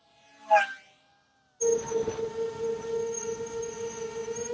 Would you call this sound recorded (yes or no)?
yes